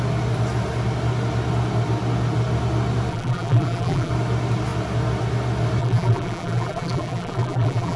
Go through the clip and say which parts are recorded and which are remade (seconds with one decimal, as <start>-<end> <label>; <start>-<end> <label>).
0.0-3.1 recorded; 3.1-4.1 remade; 4.1-5.8 recorded; 5.8-8.0 remade